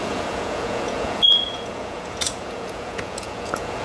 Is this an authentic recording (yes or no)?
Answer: no